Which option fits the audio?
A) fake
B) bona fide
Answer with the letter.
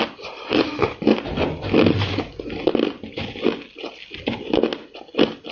B